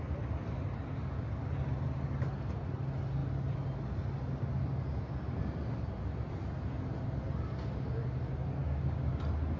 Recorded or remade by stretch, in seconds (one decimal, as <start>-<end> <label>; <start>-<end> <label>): 0.0-8.6 recorded; 8.6-9.1 remade; 9.1-9.6 recorded